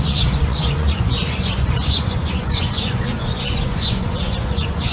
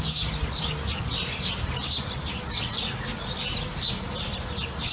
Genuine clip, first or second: second